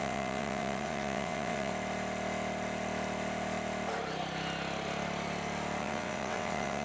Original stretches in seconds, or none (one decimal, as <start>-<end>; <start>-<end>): 1.7-5.8